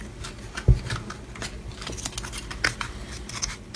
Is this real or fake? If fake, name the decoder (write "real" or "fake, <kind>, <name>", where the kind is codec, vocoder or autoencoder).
real